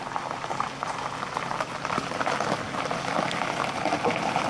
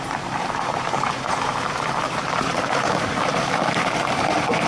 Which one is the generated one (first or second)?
second